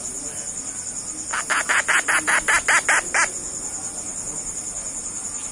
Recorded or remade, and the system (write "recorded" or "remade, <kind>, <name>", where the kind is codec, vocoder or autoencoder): recorded